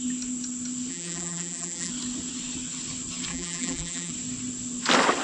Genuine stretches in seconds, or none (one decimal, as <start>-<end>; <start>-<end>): 0.0-0.9; 1.9-3.3; 4.1-5.2